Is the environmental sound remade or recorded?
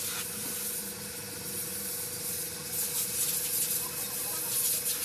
recorded